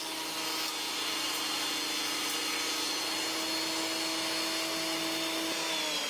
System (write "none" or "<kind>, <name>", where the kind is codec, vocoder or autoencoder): none